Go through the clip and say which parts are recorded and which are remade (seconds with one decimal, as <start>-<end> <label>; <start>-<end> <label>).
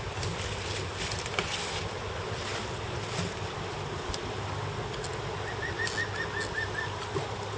0.0-7.6 recorded